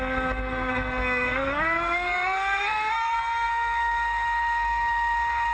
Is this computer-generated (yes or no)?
yes